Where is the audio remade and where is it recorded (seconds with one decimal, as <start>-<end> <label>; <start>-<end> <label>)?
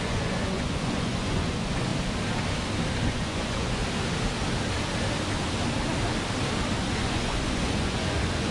0.0-1.9 remade; 1.9-3.0 recorded; 3.0-3.8 remade; 3.8-6.8 recorded; 6.8-8.5 remade